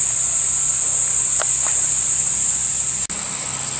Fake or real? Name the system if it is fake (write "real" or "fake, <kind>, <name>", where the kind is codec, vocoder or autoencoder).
real